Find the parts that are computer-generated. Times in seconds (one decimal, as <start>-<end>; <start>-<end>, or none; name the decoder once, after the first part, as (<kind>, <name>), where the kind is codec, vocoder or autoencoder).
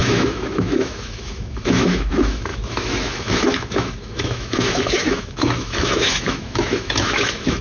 0.0-7.6 (autoencoder, DAC-VAE)